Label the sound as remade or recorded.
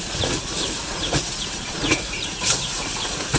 remade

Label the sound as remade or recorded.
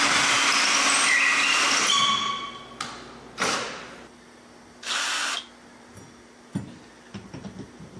recorded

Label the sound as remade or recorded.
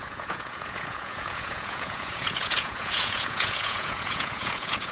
remade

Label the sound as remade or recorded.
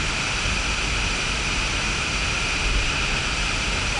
recorded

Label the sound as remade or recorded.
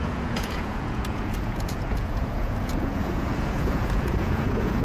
remade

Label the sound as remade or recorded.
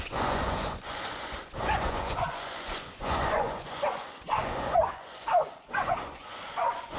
remade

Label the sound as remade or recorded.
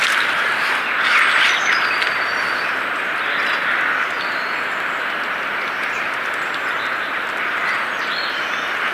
recorded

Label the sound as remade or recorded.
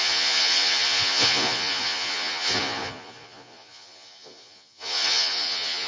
remade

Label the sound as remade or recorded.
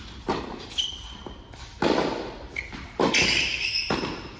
recorded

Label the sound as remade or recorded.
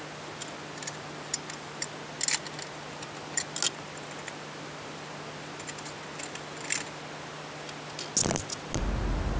recorded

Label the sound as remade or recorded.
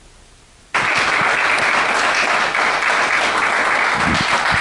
recorded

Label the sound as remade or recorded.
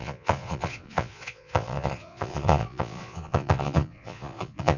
remade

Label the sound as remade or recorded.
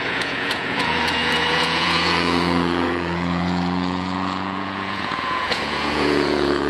remade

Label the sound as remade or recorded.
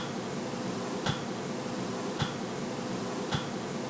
recorded